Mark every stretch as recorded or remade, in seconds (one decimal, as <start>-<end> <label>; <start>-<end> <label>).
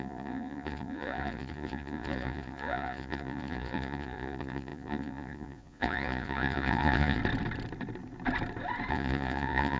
0.0-7.2 remade; 7.2-8.9 recorded; 8.9-9.8 remade